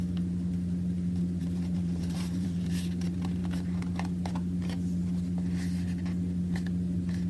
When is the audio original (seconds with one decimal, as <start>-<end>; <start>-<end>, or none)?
0.0-1.4; 2.7-7.3